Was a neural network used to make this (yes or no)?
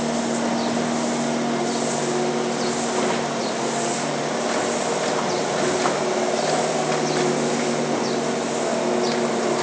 no